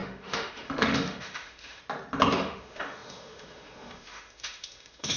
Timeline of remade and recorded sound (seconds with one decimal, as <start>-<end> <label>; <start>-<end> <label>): 0.0-1.8 remade; 1.8-2.4 recorded; 2.4-5.2 remade

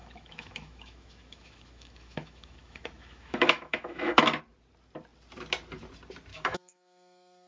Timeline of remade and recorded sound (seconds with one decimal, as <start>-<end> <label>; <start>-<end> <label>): 0.0-4.4 remade; 4.4-6.3 recorded; 6.3-7.5 remade